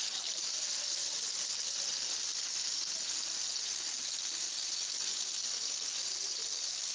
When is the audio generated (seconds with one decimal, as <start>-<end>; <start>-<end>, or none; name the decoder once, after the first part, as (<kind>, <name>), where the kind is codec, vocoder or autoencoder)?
1.0-1.5 (vocoder, BigVGAN v2); 1.9-2.8; 5.1-6.0